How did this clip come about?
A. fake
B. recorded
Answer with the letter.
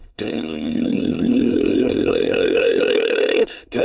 A